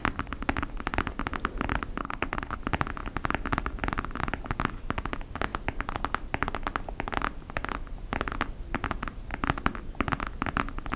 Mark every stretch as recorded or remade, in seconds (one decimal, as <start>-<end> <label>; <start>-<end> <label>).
0.0-2.0 recorded; 2.0-2.6 remade; 2.6-11.0 recorded

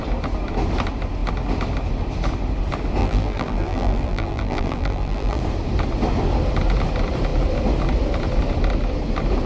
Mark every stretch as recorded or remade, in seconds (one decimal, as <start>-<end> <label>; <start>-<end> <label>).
0.0-3.0 recorded; 3.0-5.4 remade; 5.4-9.5 recorded

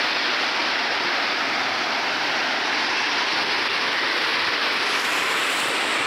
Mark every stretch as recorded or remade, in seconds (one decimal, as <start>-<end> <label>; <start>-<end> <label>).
0.0-0.6 recorded; 0.6-3.3 remade; 3.3-4.3 recorded; 4.3-5.5 remade; 5.5-6.1 recorded

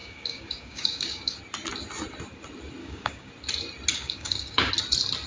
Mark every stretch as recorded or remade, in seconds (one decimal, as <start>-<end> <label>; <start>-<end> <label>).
0.0-1.4 remade; 1.4-2.8 recorded; 2.8-3.3 remade; 3.3-3.9 recorded; 3.9-4.7 remade; 4.7-5.3 recorded

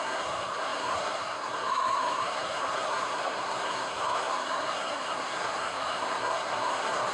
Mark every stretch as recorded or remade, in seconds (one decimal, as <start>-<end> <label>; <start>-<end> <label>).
0.0-7.1 remade

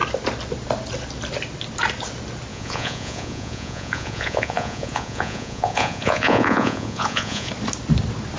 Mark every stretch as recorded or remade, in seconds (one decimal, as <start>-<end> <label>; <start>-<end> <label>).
0.0-2.5 recorded; 2.5-7.5 remade; 7.5-8.4 recorded